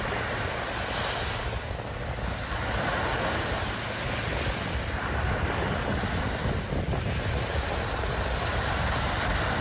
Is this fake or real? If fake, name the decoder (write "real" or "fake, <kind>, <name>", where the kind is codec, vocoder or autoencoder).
real